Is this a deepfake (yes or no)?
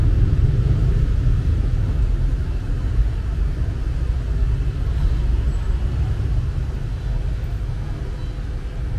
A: no